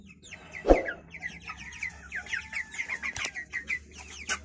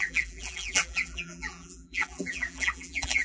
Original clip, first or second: first